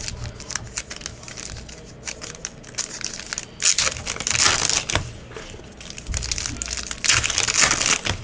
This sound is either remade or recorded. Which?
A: recorded